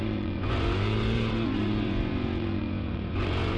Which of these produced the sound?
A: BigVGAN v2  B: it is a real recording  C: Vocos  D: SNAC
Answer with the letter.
C